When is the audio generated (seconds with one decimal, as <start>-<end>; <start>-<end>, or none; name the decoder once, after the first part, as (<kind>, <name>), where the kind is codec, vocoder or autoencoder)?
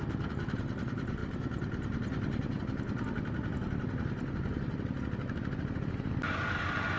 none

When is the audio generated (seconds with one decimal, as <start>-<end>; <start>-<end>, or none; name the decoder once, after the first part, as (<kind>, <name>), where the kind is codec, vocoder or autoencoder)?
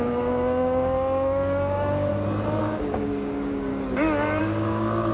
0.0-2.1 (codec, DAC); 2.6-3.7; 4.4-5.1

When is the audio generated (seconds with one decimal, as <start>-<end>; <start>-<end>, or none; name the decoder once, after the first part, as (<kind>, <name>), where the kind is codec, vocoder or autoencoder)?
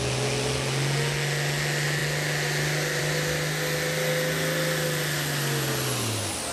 none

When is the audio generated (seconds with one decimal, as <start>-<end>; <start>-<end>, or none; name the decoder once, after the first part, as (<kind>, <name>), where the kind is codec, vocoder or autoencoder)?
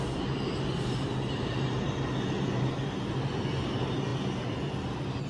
none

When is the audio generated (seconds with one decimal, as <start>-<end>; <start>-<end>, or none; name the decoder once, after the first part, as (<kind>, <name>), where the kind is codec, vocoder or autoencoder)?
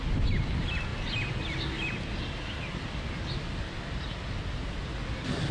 none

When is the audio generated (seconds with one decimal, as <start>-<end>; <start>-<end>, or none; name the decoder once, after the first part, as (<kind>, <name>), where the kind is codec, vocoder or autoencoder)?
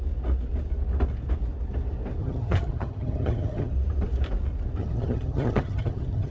2.2-3.7 (vocoder, HiFi-GAN); 4.8-6.3